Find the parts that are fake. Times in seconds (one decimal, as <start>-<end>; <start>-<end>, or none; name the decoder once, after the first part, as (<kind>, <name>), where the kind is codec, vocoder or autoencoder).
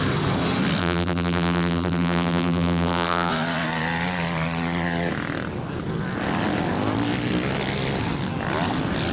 0.8-3.3 (vocoder, BigVGAN v2)